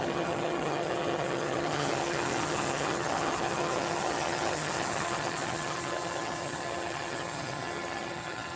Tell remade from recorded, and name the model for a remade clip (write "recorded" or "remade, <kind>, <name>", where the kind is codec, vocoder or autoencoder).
remade, vocoder, HiFi-GAN